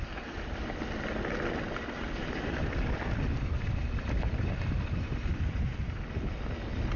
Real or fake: real